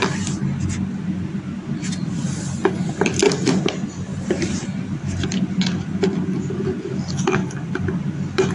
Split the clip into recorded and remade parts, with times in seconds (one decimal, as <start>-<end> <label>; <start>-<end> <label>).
0.0-4.1 recorded; 4.1-5.0 remade; 5.0-8.5 recorded